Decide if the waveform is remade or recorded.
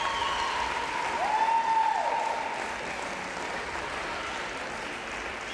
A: recorded